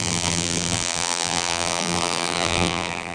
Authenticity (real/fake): fake